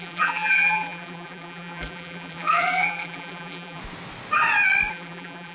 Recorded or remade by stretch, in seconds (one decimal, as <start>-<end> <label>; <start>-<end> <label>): 0.0-3.8 remade; 3.8-4.9 recorded; 4.9-5.5 remade